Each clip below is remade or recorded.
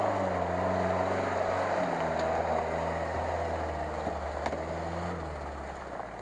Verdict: recorded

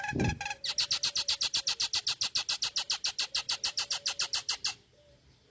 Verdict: recorded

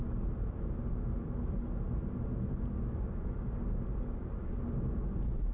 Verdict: recorded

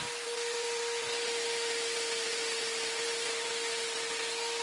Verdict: recorded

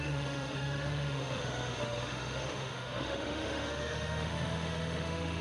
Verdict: remade